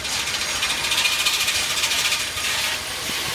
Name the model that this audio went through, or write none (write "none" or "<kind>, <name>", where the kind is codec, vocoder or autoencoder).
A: none